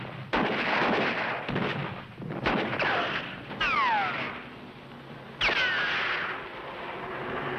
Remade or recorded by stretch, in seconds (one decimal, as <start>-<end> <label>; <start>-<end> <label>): 0.0-1.8 recorded; 1.8-3.5 remade; 3.5-7.6 recorded